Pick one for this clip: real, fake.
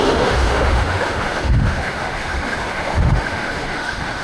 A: fake